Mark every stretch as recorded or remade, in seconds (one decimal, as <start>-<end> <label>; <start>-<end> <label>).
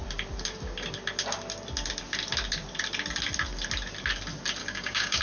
0.0-4.6 recorded; 4.6-5.2 remade